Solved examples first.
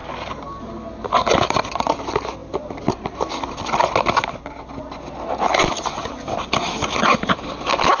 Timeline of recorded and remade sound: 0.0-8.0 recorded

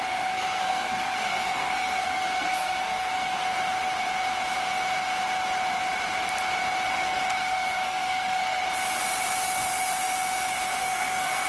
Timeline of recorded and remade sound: 0.0-3.4 remade; 3.4-6.9 recorded; 6.9-8.6 remade; 8.6-10.8 recorded; 10.8-11.5 remade